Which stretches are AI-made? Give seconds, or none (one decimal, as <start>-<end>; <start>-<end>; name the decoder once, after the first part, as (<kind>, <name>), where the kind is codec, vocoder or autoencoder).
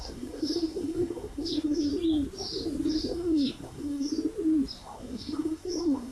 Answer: 0.0-1.9 (codec, SNAC); 2.9-4.1; 4.8-6.1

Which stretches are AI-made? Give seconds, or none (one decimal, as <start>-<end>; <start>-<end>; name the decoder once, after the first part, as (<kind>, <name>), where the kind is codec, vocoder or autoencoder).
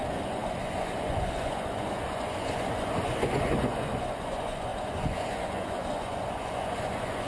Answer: 0.0-7.3 (vocoder, Vocos)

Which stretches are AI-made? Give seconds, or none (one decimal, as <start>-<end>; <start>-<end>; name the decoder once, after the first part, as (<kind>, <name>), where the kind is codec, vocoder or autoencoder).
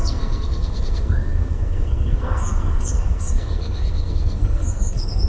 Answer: 0.0-5.3 (codec, SNAC)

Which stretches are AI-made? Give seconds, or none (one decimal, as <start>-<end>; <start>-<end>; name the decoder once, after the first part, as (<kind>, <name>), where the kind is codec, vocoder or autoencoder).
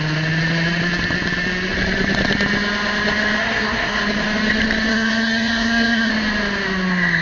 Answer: 3.4-4.0 (codec, SNAC); 4.9-6.1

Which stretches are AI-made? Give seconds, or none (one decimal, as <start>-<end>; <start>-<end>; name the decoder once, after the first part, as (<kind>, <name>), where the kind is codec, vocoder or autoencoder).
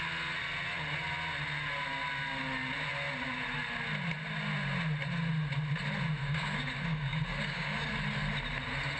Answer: 6.2-7.9 (codec, DAC)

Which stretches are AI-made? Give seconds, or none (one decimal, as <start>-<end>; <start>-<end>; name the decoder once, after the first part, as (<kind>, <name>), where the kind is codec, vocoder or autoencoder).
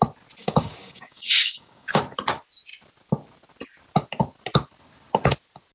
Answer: 0.4-2.0 (codec, DAC)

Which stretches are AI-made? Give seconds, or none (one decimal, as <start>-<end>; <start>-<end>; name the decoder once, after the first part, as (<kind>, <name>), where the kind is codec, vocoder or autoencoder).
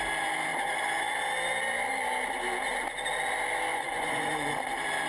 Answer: 3.7-4.5 (vocoder, Vocos)